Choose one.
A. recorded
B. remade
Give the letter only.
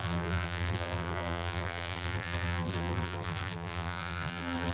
B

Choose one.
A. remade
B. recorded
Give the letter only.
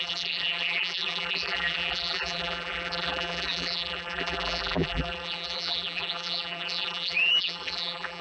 A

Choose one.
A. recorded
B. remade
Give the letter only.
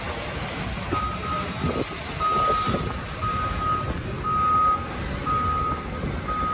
A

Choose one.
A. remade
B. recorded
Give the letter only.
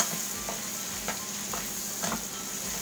B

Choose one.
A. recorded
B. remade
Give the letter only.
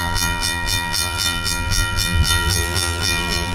B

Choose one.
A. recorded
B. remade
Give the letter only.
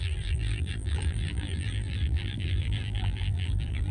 B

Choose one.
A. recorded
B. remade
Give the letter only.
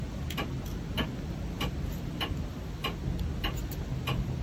A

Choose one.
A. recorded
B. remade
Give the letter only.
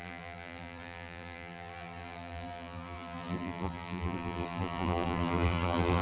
B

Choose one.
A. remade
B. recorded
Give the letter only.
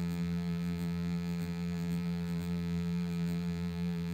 A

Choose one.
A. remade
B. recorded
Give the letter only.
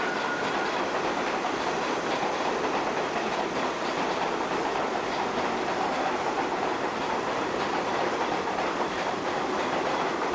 A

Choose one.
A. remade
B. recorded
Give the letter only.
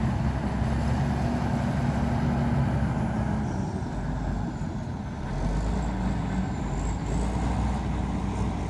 B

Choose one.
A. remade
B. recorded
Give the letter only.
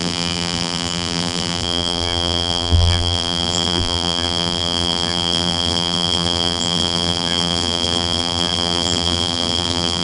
A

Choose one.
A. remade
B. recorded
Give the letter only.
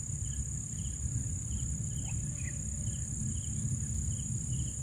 B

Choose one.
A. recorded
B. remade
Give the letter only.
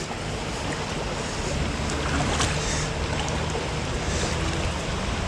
A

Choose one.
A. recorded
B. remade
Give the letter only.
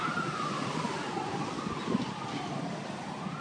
A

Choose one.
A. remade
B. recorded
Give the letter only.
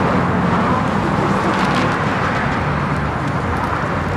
B